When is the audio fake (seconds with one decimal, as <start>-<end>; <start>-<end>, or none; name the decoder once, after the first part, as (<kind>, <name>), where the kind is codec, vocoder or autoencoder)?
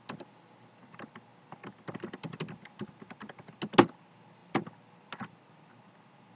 none